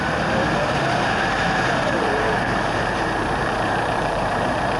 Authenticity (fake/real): fake